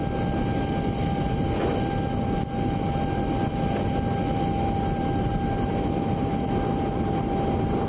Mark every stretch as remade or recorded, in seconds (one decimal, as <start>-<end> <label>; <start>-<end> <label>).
0.0-7.9 recorded